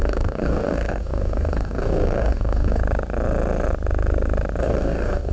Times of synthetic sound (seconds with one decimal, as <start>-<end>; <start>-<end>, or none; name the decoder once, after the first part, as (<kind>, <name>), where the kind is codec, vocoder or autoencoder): 0.0-2.8 (codec, DAC); 4.6-5.3